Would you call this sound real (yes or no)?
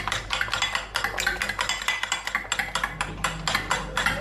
yes